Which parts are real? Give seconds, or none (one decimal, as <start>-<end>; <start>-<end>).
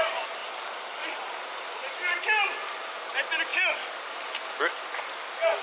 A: 0.0-5.6